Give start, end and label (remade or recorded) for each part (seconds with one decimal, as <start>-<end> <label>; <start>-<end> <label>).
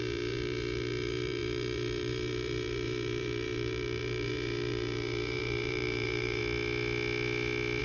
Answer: 0.0-6.4 remade; 6.4-7.8 recorded